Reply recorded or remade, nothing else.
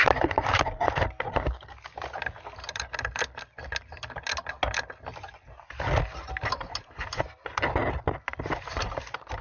recorded